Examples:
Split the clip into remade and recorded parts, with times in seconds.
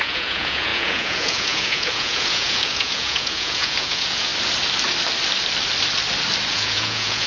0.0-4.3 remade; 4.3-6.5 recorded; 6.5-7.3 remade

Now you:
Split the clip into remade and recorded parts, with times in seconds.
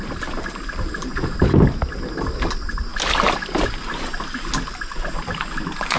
0.0-6.0 recorded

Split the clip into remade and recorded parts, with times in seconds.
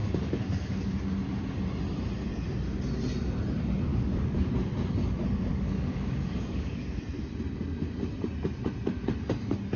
0.0-0.9 remade; 0.9-3.9 recorded; 3.9-4.5 remade; 4.5-5.5 recorded; 5.5-7.0 remade; 7.0-9.8 recorded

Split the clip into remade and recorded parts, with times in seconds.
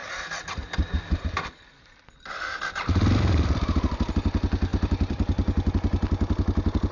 0.0-4.1 remade; 4.1-4.7 recorded; 4.7-5.7 remade; 5.7-6.9 recorded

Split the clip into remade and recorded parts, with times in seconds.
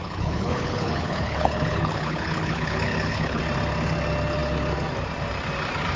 0.0-3.4 remade; 3.4-6.0 recorded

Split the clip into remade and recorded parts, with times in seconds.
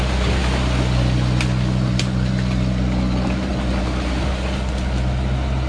0.0-5.7 recorded